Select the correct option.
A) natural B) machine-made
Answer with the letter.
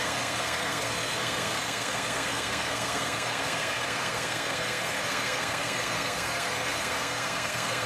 B